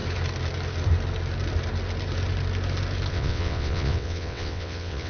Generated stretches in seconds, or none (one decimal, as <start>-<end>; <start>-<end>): 3.1-5.1